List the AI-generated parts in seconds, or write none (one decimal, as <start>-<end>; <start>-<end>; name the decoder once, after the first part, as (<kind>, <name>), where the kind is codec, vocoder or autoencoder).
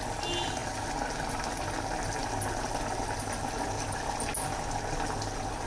none